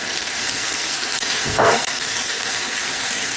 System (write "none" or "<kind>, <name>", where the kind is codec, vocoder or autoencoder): codec, SNAC